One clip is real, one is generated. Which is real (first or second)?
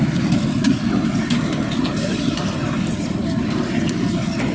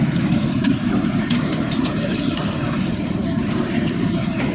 first